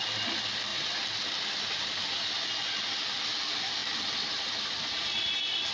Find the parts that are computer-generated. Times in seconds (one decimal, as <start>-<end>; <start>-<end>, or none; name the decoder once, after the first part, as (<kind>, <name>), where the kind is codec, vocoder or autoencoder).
3.8-5.3 (vocoder, BigVGAN v2)